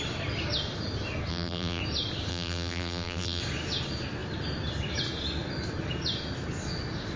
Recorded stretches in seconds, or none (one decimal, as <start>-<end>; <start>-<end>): 0.0-1.3; 1.8-2.3; 3.4-7.2